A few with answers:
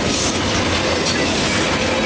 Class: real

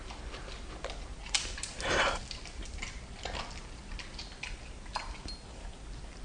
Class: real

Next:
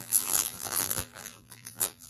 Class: fake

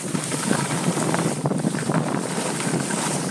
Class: fake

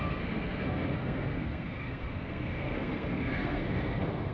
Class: fake